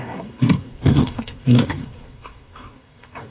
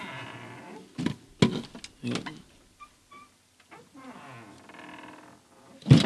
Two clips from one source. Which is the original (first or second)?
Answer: second